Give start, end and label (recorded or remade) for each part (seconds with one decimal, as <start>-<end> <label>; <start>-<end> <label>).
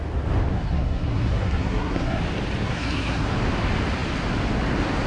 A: 0.0-0.5 recorded; 0.5-2.2 remade; 2.2-2.6 recorded; 2.6-3.3 remade; 3.3-5.1 recorded